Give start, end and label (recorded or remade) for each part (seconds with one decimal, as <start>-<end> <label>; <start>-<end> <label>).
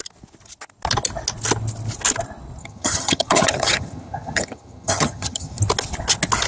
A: 0.0-2.6 recorded; 2.6-5.6 remade; 5.6-6.5 recorded